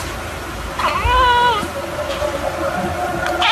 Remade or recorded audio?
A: recorded